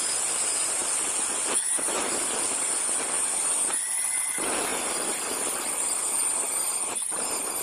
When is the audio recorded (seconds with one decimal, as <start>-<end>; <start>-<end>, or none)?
0.0-7.6

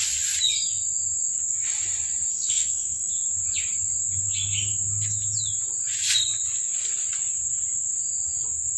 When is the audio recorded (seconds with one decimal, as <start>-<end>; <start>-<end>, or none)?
0.0-2.3; 3.1-8.8

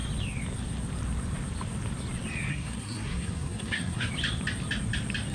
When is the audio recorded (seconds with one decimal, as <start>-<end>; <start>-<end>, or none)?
0.0-2.5; 4.1-5.3

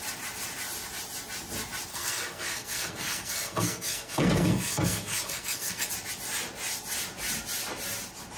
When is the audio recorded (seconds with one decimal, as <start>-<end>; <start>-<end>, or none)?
0.0-1.9; 5.9-8.4